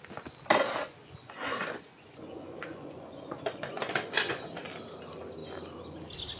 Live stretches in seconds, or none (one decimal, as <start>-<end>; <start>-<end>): 0.0-0.9; 4.5-6.4

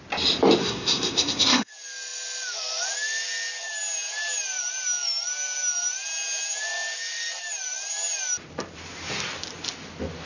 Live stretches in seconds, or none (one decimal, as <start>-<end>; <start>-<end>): 0.0-0.6; 1.7-10.3

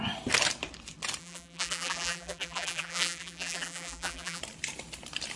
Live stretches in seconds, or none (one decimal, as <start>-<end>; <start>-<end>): 0.0-1.2; 4.4-5.4

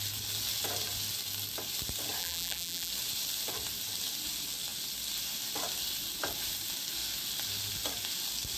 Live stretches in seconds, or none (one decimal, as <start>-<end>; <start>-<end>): 0.0-2.2; 2.9-8.6

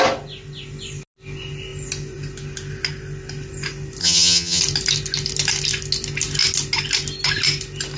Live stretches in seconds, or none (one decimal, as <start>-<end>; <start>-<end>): 0.0-4.0; 4.6-8.0

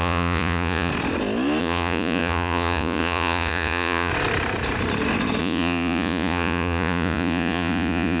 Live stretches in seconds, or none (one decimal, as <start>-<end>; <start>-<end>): 0.9-1.6; 4.1-5.4

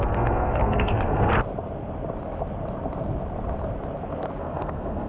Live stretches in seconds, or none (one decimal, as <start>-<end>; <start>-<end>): 1.3-4.4

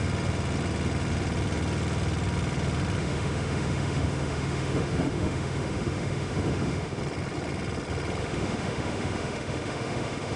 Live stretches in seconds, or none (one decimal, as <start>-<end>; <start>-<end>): 0.0-3.0; 7.0-8.2